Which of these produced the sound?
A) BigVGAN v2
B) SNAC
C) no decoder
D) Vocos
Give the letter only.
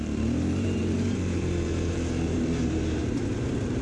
A